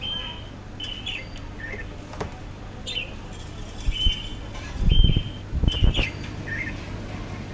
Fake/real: real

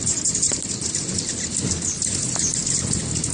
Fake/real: real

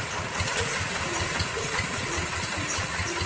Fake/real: fake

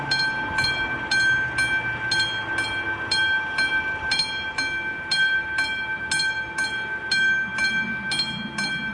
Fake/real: real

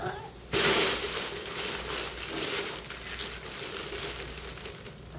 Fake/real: real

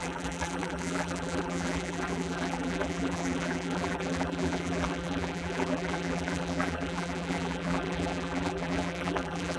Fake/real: fake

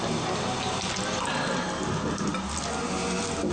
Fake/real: real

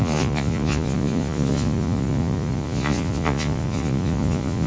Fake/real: fake